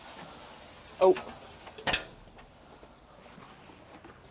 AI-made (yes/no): no